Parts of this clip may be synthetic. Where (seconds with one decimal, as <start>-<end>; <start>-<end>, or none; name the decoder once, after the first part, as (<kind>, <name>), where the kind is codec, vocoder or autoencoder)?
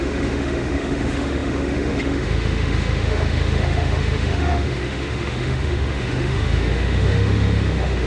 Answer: 0.0-8.1 (autoencoder, DAC-VAE)